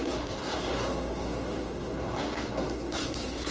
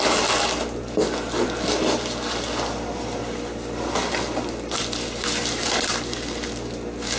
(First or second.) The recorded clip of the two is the second